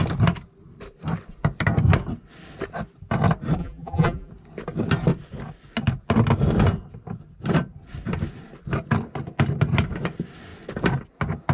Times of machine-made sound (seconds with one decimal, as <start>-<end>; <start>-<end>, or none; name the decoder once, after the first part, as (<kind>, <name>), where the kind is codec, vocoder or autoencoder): 3.6-4.3 (vocoder, BigVGAN v2)

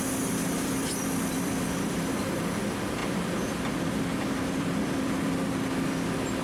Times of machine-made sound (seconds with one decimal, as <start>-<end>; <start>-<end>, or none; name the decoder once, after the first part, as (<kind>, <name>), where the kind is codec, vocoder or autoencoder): 0.8-2.6 (vocoder, BigVGAN v2); 3.0-5.5

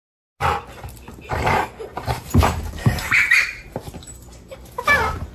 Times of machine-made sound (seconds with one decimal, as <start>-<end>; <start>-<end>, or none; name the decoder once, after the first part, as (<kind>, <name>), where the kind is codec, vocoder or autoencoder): 1.9-4.7 (vocoder, BigVGAN v2)

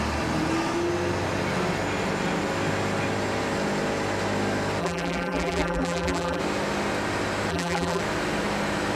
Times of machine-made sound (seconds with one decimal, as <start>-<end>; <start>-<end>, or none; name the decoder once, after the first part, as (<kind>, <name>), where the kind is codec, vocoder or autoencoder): 4.8-6.4 (vocoder, BigVGAN v2); 7.5-8.0

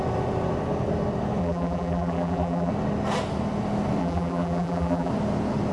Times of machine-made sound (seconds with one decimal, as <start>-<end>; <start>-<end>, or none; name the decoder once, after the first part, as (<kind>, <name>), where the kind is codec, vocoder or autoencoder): 1.4-2.7 (vocoder, BigVGAN v2); 4.0-5.1